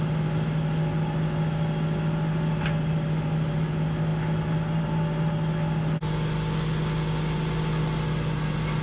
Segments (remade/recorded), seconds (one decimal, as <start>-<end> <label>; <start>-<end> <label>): 0.0-8.8 recorded